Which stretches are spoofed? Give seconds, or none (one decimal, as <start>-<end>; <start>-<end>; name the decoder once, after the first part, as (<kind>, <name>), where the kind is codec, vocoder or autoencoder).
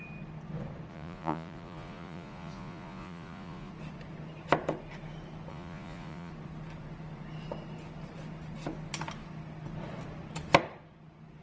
0.9-3.7 (vocoder, Vocos); 5.5-6.3